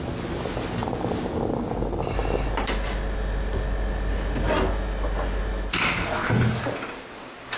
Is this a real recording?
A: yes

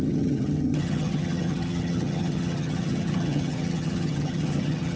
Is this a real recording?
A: no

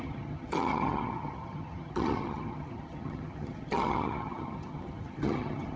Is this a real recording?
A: no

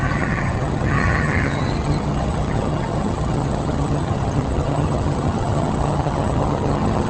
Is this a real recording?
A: no